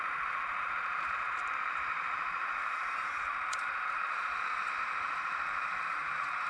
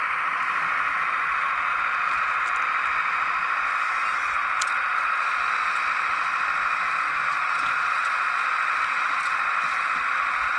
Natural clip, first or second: second